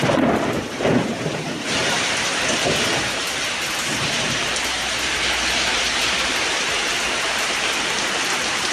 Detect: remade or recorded remade